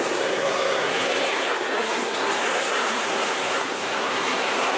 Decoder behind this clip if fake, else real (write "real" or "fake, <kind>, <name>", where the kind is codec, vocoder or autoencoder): fake, codec, SNAC